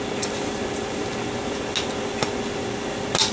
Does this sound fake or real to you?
real